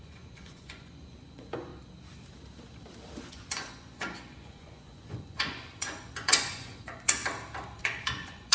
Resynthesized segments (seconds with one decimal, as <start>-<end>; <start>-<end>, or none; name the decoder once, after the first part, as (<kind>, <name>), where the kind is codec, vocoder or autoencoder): 0.0-1.7 (vocoder, Vocos); 3.2-7.2; 7.8-8.5